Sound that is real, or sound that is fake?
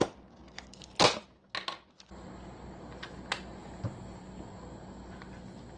real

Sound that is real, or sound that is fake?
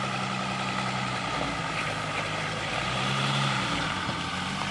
fake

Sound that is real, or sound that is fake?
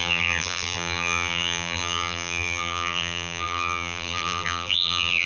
fake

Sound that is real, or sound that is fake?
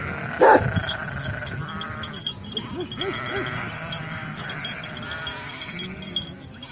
real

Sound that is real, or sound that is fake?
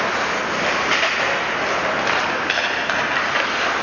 real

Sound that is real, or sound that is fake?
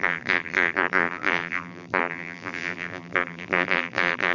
fake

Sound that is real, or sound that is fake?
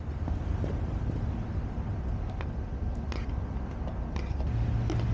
real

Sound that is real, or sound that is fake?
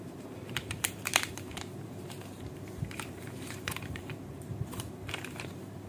fake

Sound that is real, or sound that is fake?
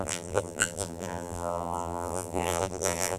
fake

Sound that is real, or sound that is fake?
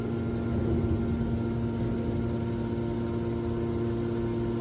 real